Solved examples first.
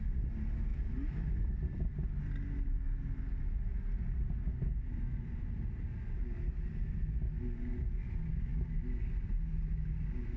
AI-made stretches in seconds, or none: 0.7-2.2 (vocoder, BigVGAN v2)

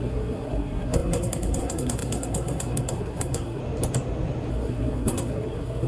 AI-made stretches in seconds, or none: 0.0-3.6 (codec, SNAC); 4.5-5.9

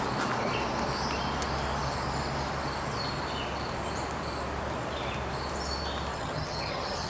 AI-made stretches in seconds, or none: 6.1-7.1 (vocoder, HiFi-GAN)

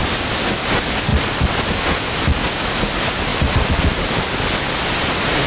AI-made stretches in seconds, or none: none

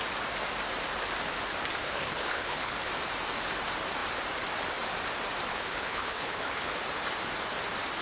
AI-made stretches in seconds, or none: 1.8-2.9 (codec, HILCodec); 5.5-6.7

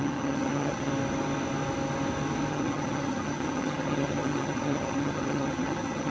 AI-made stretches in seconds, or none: 0.0-0.9 (vocoder, HiFi-GAN); 2.5-6.1

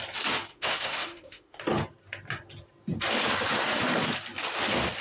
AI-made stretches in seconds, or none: 0.5-1.6 (autoencoder, DAC-VAE)

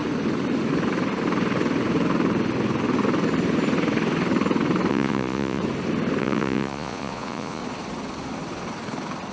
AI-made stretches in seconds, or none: 4.9-5.6 (vocoder, Vocos); 6.2-7.6